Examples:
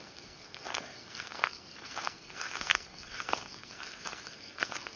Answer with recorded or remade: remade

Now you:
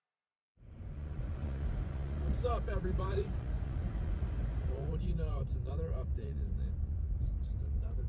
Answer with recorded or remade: remade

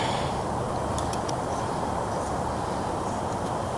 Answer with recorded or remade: recorded